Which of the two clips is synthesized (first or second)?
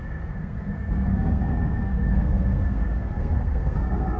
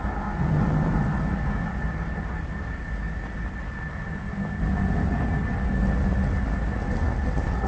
first